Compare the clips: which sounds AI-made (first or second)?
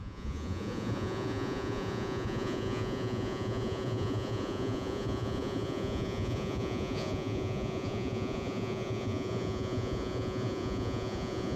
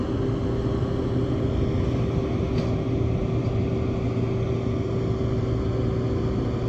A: first